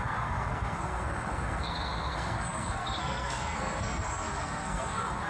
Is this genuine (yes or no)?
no